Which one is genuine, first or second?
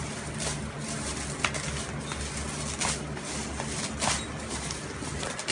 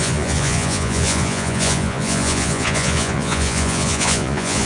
first